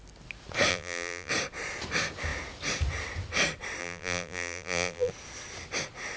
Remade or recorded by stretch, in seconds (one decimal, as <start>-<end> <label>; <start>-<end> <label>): 0.0-0.7 recorded; 0.7-1.3 remade; 1.3-3.8 recorded; 3.8-5.1 remade; 5.1-6.2 recorded